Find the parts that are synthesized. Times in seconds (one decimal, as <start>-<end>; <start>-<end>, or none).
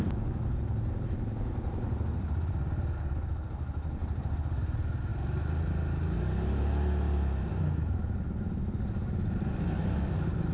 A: none